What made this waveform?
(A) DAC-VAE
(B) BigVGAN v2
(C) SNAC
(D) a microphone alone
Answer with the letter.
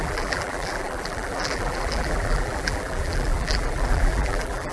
B